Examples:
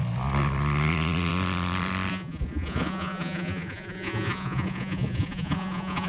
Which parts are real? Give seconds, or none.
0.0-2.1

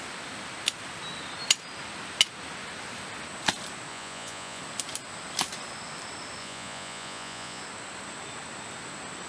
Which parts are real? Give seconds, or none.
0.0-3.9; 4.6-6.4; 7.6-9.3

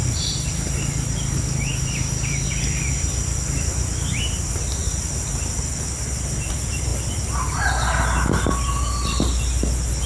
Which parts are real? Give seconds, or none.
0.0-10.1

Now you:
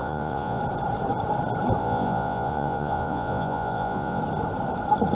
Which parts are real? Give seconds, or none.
0.6-1.8; 4.2-5.1

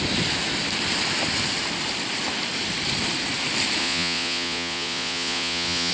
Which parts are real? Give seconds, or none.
0.0-3.8

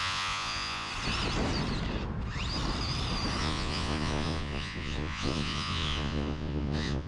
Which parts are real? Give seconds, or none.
0.9-3.4

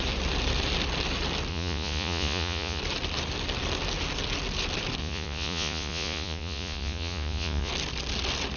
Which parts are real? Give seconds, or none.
0.0-1.5; 2.8-5.0; 7.7-8.6

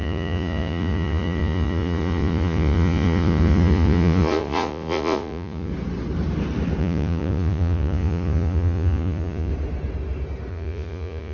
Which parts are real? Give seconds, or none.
5.7-6.8; 9.5-10.5